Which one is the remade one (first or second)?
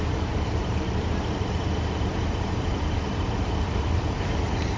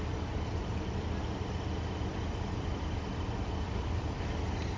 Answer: first